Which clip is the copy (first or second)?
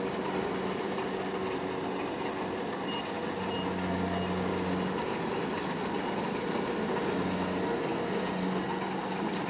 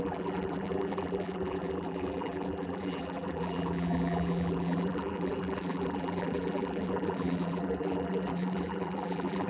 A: second